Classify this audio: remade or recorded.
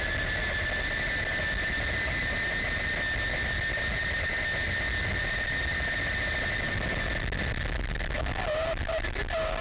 recorded